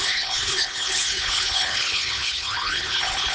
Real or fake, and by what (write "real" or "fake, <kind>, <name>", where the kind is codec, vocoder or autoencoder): fake, codec, HILCodec